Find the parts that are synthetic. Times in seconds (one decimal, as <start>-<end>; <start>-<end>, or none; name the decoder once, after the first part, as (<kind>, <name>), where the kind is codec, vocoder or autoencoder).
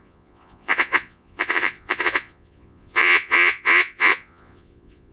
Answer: 0.0-5.1 (vocoder, Vocos)